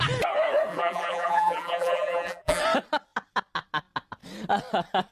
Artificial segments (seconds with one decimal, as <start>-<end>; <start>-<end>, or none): 0.7-2.6